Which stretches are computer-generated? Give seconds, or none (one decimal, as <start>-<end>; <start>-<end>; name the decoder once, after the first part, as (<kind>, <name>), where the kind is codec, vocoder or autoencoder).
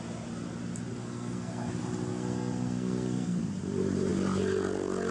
1.0-1.7 (codec, SNAC); 2.1-3.5